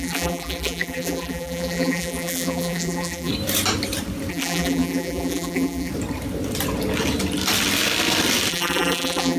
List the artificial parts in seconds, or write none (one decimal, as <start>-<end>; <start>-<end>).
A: 0.0-3.3; 4.3-5.9; 8.5-9.4